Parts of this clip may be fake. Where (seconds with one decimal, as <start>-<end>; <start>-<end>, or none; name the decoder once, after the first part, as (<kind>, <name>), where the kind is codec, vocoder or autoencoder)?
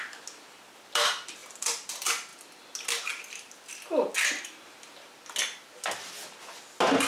none